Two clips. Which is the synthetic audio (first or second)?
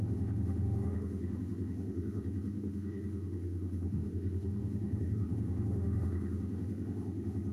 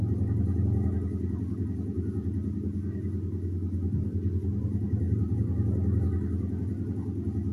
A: first